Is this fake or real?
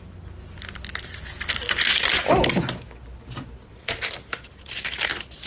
real